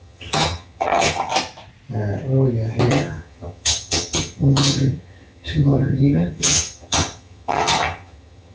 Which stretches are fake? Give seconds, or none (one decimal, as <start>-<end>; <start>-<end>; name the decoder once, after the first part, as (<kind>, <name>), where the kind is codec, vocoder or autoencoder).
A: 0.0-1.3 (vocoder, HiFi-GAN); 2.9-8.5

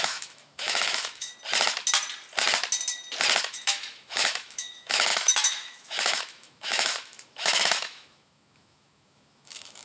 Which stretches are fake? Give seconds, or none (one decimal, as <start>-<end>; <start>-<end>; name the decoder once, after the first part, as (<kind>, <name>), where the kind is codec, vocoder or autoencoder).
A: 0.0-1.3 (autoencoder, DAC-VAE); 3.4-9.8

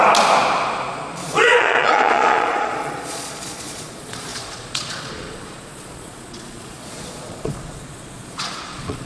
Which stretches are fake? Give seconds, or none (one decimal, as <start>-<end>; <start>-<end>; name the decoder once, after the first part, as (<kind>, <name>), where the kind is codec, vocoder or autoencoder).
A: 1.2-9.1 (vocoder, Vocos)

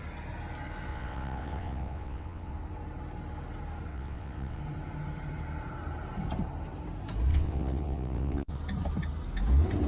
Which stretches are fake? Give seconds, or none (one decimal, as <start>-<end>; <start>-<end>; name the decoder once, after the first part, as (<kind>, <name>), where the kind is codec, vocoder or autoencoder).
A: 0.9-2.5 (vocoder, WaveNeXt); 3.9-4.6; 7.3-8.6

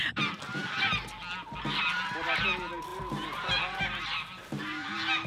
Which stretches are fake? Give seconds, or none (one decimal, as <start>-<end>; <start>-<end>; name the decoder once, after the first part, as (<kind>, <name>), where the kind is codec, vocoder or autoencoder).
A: 2.9-3.6 (vocoder, BigVGAN v2)